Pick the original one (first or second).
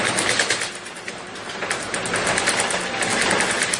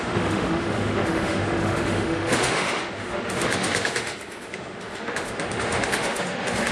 first